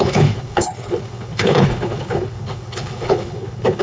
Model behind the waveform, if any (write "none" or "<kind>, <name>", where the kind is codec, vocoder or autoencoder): codec, HILCodec